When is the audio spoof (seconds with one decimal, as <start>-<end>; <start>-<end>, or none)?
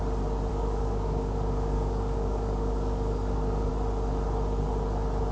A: 0.5-3.7